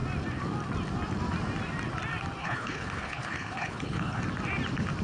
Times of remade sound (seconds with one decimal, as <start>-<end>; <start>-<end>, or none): 2.4-4.2